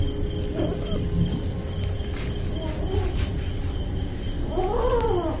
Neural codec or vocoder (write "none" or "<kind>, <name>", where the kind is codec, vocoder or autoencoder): none